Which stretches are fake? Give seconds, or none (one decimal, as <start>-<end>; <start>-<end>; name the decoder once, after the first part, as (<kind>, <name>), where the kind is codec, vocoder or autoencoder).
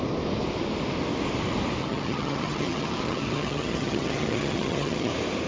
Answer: 1.8-5.1 (vocoder, HiFi-GAN)